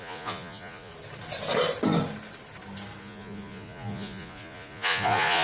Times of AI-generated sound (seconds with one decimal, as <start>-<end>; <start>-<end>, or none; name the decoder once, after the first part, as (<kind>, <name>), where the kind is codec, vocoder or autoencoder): 0.0-0.9 (vocoder, Vocos); 3.0-5.4

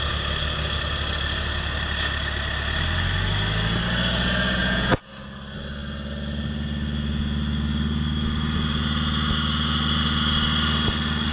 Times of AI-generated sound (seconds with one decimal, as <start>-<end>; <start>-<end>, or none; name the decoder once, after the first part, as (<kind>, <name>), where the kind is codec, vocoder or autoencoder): 4.6-5.1 (vocoder, Vocos)

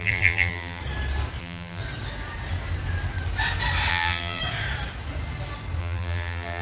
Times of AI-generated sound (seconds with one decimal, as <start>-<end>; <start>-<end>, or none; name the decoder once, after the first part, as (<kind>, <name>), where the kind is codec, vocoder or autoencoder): 0.0-0.8 (vocoder, BigVGAN v2); 1.4-1.8; 3.9-4.4; 5.8-6.6

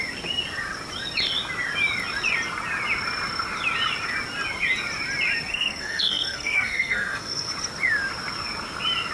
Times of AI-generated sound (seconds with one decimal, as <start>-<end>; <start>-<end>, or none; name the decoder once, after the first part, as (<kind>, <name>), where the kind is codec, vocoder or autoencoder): 5.5-7.5 (codec, SNAC)

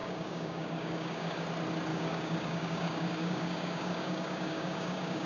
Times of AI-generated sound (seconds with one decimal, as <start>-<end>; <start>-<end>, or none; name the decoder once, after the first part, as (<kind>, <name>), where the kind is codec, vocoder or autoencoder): 0.0-1.4 (codec, DAC); 1.9-5.3

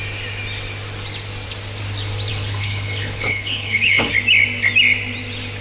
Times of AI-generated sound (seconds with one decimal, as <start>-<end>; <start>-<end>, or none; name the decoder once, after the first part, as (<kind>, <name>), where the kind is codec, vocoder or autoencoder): 2.3-4.1 (codec, HILCodec)

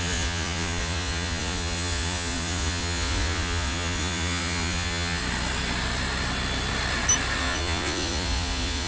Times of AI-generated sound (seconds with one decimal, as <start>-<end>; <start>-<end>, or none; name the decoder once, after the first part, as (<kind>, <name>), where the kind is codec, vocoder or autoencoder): 0.0-5.2 (vocoder, Vocos); 7.4-8.9